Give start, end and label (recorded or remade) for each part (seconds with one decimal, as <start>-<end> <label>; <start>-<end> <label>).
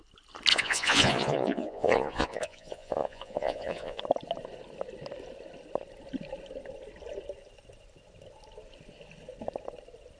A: 0.0-0.5 recorded; 0.5-4.0 remade; 4.0-10.2 recorded